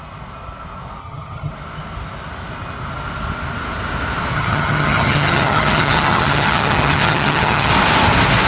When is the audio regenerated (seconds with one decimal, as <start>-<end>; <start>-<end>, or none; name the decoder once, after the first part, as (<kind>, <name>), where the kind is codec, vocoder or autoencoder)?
1.0-1.5 (vocoder, HiFi-GAN); 4.3-7.7

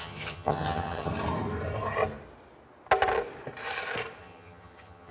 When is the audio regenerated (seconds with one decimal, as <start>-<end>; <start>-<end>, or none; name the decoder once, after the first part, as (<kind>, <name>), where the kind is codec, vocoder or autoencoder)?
0.0-1.1 (vocoder, HiFi-GAN); 4.2-5.1